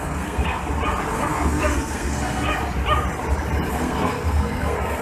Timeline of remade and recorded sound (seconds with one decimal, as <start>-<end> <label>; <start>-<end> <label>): 0.0-0.6 remade; 0.6-1.1 recorded; 1.1-2.5 remade; 2.5-3.7 recorded; 3.7-5.0 remade